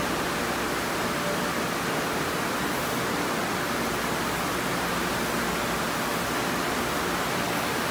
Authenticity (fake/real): real